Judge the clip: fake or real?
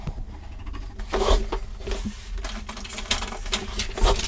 real